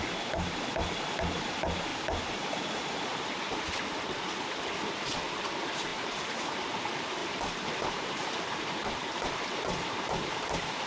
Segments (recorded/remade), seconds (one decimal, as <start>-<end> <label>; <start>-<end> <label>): 0.0-5.9 recorded; 5.9-6.8 remade; 6.8-7.2 recorded; 7.2-10.5 remade; 10.5-10.9 recorded